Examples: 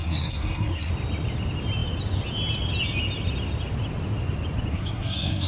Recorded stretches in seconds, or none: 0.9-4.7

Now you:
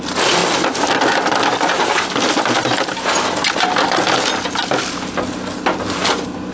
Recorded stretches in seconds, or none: 0.0-6.5